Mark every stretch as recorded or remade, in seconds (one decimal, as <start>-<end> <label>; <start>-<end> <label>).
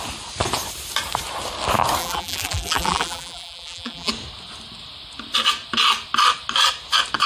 0.0-2.0 recorded; 2.0-4.1 remade; 4.1-7.3 recorded